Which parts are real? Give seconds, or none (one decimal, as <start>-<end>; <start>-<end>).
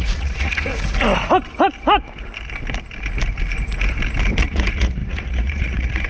0.7-4.4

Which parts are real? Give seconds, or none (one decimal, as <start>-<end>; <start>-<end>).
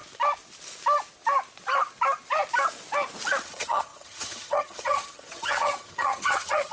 0.0-3.4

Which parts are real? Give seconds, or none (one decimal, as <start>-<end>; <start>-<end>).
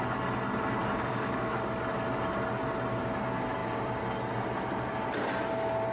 0.0-0.8; 1.5-5.9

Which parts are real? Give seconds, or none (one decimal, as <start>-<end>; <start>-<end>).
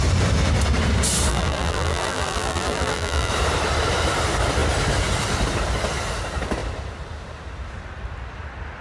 0.0-1.3; 3.3-8.8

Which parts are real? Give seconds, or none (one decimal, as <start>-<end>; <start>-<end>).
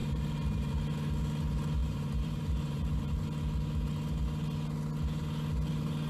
0.7-1.8; 3.2-6.1